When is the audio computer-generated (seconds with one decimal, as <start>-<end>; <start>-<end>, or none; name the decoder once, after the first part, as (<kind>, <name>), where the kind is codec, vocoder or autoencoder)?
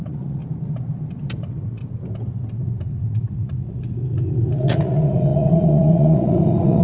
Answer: 0.0-0.4 (vocoder, Vocos); 1.4-1.8; 2.8-6.8